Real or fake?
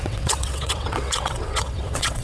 fake